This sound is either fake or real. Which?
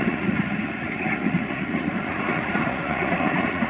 fake